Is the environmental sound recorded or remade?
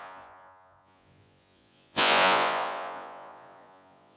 remade